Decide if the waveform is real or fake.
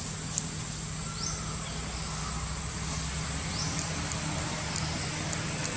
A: real